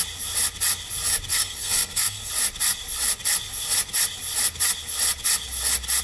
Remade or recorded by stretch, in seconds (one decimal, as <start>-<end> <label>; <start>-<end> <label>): 0.0-1.3 recorded; 1.3-2.3 remade; 2.3-6.0 recorded

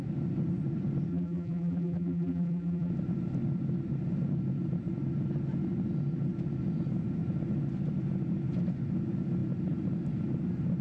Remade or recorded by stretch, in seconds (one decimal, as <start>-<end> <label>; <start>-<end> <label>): 0.0-1.1 recorded; 1.1-2.9 remade; 2.9-10.8 recorded

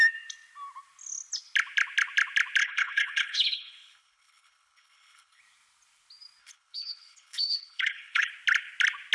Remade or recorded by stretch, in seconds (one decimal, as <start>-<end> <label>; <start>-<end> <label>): 0.0-2.6 recorded; 2.6-5.4 remade; 5.4-6.4 recorded; 6.4-8.3 remade; 8.3-9.1 recorded

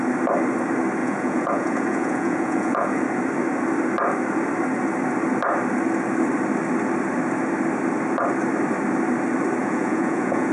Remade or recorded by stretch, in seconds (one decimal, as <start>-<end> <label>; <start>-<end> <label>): 0.0-1.0 recorded; 1.0-3.0 remade; 3.0-9.6 recorded; 9.6-10.5 remade

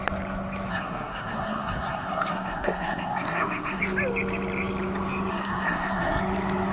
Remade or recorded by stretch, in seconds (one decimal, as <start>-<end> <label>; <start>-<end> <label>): 0.0-0.7 recorded; 0.7-3.8 remade; 3.8-5.3 recorded; 5.3-6.2 remade; 6.2-6.7 recorded

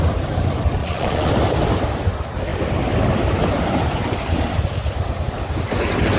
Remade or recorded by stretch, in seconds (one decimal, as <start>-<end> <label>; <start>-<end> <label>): 0.0-0.8 recorded; 0.8-1.3 remade; 1.3-6.2 recorded